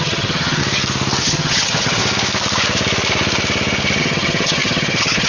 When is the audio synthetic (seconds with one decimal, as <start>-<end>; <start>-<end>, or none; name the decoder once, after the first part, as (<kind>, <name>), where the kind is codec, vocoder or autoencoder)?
0.0-0.6 (vocoder, HiFi-GAN); 1.2-2.0; 4.0-5.3